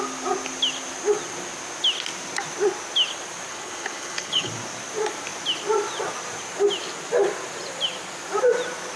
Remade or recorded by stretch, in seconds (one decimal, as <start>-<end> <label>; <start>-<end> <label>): 0.0-3.5 recorded; 3.5-4.5 remade; 4.5-9.0 recorded